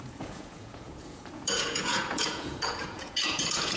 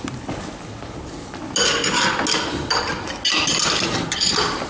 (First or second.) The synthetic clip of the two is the first